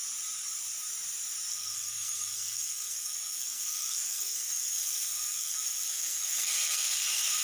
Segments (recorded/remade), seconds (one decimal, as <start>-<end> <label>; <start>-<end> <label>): 0.0-1.5 recorded; 1.5-7.4 remade